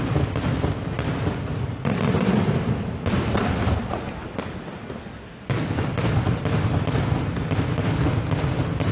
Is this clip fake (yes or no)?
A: no